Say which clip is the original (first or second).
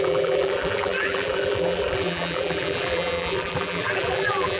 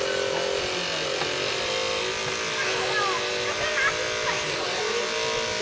second